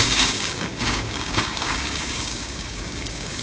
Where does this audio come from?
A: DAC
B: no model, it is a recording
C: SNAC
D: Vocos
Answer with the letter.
A